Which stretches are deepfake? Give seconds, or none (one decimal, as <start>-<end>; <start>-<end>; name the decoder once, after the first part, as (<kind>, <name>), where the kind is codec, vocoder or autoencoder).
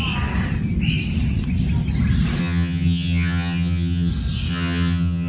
2.4-4.1 (vocoder, HiFi-GAN); 4.5-5.3